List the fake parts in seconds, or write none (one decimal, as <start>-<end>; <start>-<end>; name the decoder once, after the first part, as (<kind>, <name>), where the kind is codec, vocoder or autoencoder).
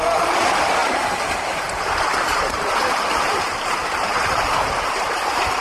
0.0-5.6 (vocoder, BigVGAN v2)